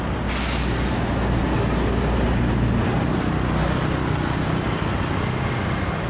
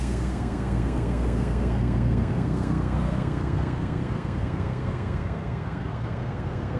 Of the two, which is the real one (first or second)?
first